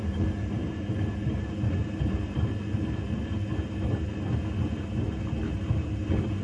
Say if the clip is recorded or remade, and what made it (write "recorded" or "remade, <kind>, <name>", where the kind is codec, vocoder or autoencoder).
recorded